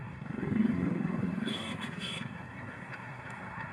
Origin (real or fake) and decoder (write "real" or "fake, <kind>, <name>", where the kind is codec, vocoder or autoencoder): fake, codec, SNAC